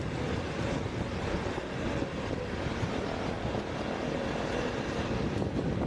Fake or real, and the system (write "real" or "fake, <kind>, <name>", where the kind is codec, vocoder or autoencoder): real